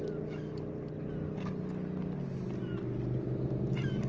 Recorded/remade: recorded